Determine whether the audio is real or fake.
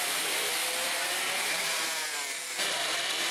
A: fake